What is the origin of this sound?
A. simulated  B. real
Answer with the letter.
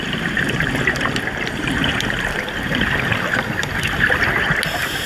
B